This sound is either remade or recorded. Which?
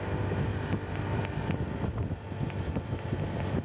recorded